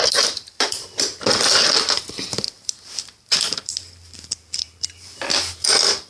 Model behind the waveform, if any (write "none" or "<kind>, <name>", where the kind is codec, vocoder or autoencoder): none